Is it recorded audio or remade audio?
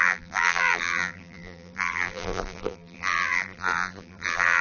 remade